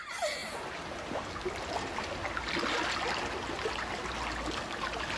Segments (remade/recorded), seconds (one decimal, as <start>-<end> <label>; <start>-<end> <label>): 0.0-5.2 recorded